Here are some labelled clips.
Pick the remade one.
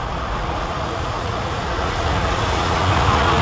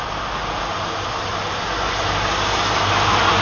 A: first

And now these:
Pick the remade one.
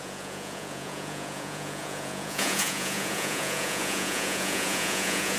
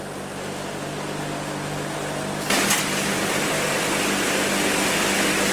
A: first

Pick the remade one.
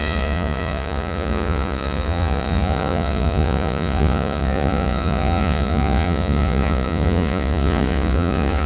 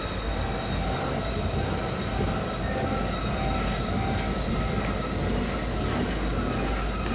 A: first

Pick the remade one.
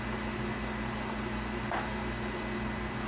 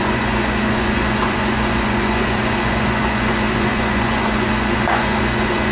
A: second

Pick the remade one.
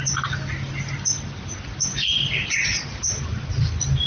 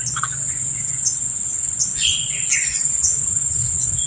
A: second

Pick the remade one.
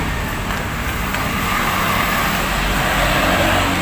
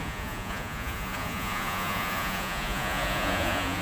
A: second